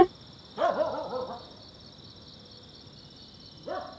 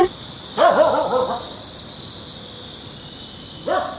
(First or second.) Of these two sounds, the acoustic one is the first